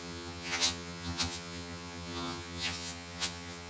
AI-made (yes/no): yes